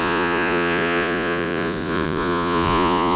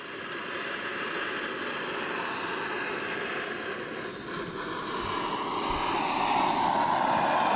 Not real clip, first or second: first